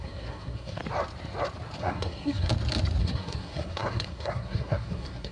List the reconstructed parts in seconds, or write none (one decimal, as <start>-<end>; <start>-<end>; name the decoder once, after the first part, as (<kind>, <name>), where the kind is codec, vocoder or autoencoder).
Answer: 0.0-0.8 (codec, SNAC); 1.8-2.5; 3.0-5.3